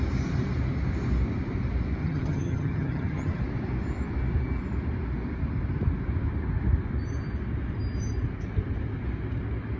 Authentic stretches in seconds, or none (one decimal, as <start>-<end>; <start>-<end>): 0.0-2.0; 3.4-9.8